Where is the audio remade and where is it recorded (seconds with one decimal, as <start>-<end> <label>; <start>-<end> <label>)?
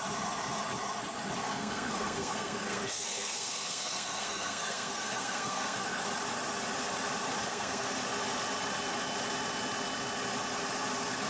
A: 0.0-1.4 recorded; 1.4-6.0 remade; 6.0-7.5 recorded; 7.5-8.0 remade; 8.0-11.3 recorded